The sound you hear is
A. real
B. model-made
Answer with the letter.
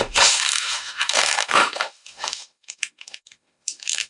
B